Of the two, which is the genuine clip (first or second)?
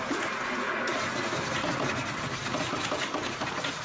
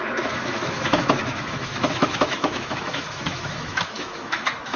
first